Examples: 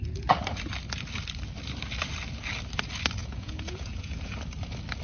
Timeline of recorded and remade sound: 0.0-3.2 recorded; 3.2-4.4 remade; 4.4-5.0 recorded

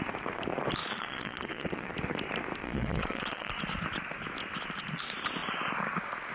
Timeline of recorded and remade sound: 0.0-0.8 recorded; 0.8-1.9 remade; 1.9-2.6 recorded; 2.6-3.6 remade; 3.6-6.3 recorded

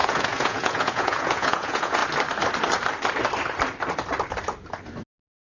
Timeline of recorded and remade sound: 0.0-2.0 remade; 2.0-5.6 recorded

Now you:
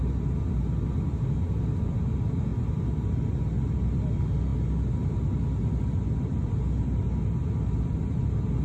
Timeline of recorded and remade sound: 0.0-8.6 recorded

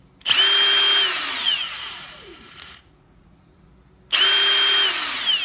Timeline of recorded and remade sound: 0.0-1.3 recorded; 1.3-3.7 remade; 3.7-5.4 recorded